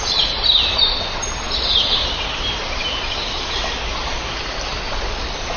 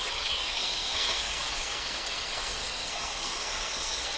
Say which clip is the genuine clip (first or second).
first